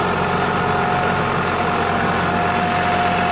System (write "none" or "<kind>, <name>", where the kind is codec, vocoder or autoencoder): none